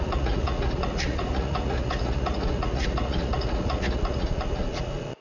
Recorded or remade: remade